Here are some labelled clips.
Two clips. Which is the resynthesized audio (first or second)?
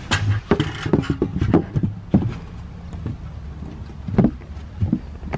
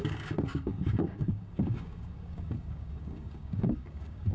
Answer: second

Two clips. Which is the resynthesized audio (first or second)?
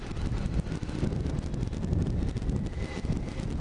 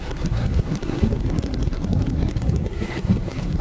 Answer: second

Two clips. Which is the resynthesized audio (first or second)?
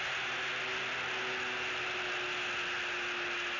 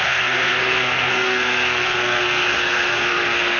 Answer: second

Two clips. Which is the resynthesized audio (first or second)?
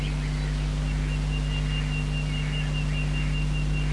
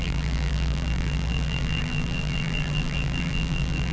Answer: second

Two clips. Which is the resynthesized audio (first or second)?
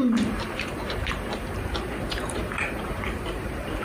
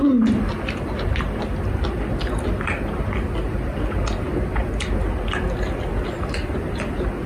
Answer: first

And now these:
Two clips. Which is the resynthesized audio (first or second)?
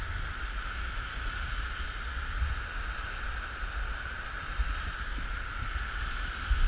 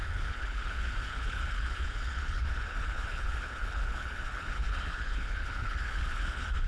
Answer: second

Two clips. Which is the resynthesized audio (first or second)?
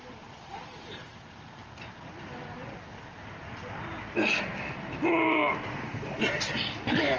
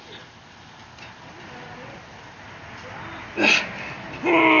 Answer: first